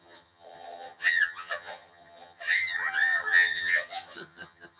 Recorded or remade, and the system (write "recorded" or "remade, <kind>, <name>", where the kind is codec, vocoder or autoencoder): remade, vocoder, HiFi-GAN